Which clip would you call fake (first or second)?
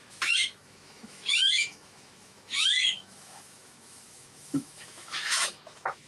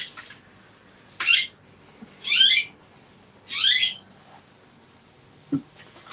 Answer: first